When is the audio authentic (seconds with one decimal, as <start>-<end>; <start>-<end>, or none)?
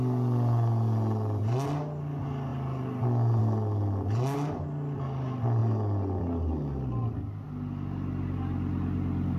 0.0-9.4